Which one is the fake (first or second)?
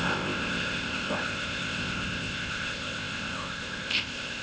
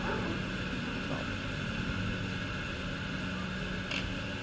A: first